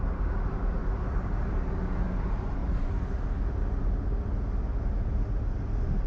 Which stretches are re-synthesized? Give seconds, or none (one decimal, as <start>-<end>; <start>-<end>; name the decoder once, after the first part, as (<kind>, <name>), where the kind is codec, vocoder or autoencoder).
none